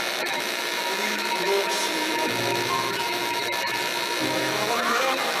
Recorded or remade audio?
remade